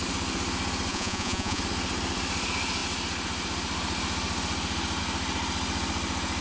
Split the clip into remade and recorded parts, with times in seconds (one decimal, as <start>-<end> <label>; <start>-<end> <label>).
0.0-0.9 recorded; 0.9-1.6 remade; 1.6-6.4 recorded